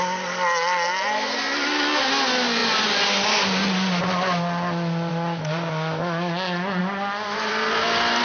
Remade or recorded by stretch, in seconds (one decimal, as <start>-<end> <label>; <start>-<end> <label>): 0.0-8.2 recorded